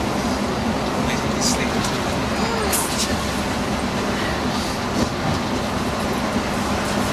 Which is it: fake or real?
real